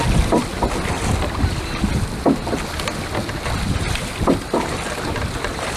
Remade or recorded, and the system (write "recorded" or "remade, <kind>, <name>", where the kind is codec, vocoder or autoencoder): recorded